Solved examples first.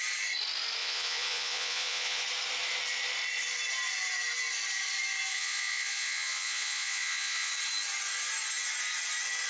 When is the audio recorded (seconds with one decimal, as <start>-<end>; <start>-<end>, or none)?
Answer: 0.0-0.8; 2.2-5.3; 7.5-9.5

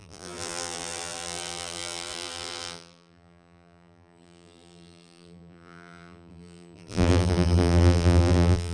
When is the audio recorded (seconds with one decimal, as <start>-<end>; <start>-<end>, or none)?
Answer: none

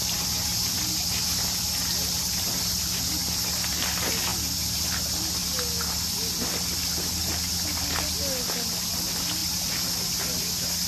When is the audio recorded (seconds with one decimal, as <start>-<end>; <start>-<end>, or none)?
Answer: 0.0-10.9

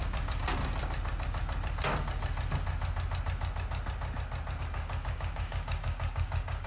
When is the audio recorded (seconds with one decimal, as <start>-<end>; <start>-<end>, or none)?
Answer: 0.6-4.6